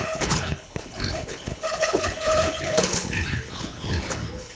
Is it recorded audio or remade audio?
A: remade